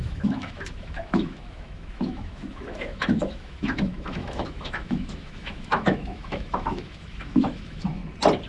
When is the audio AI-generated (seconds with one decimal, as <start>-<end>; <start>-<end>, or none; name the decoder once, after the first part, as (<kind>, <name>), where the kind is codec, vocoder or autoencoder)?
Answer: 0.0-8.0 (autoencoder, DAC-VAE)